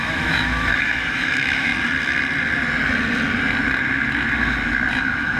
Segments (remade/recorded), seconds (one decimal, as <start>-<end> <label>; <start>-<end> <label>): 0.0-1.7 remade; 1.7-4.9 recorded; 4.9-5.4 remade